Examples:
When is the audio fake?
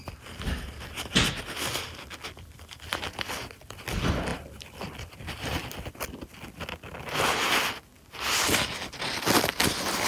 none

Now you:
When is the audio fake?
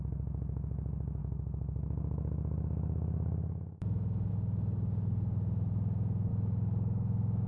1.2-4.3 (autoencoder, DAC-VAE); 6.3-7.5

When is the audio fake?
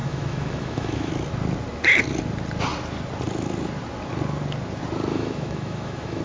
0.0-1.1 (autoencoder, DAC-VAE); 5.1-6.2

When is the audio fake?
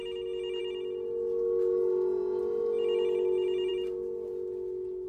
none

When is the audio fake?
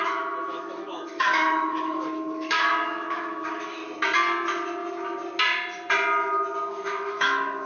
0.0-3.8 (autoencoder, DAC-VAE); 6.7-7.7